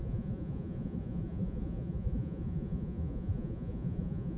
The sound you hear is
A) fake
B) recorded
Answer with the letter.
A